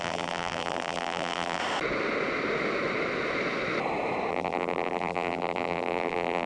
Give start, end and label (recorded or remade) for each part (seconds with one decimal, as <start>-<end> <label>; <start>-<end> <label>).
0.0-1.6 remade; 1.6-4.3 recorded; 4.3-6.5 remade